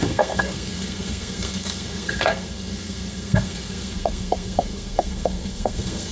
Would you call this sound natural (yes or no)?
no